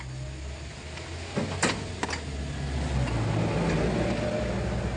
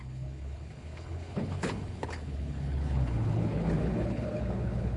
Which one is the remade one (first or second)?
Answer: second